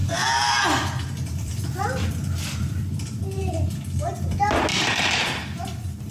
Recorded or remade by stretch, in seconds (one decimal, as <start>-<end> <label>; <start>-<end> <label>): 0.0-3.5 remade; 3.5-4.7 recorded; 4.7-6.1 remade